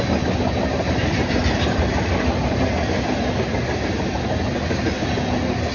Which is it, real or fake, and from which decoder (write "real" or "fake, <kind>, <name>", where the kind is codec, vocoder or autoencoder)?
real